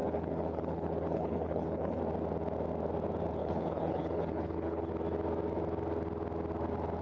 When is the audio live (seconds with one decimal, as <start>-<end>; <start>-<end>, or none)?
2.0-3.4; 4.9-7.0